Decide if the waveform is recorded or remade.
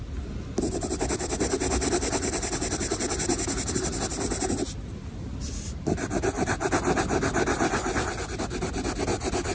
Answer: recorded